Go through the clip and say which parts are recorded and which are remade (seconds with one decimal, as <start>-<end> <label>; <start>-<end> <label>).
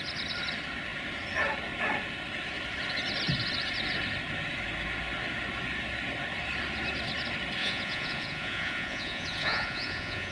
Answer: 0.0-7.6 recorded; 7.6-10.3 remade